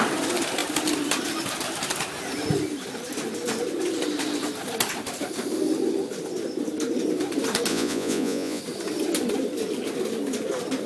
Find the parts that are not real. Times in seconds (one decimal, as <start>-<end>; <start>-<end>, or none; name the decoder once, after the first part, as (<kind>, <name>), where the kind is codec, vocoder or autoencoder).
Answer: 7.7-8.6 (vocoder, Vocos)